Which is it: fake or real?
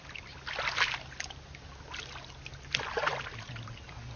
real